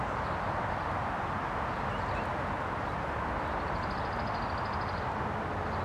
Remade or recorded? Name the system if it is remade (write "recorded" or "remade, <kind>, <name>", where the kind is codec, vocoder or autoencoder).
recorded